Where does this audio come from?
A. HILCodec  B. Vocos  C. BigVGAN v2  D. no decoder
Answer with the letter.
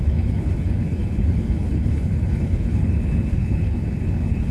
A